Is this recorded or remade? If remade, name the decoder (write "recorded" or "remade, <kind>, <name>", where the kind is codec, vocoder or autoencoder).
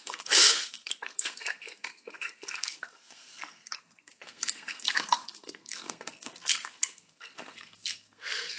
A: remade, codec, SNAC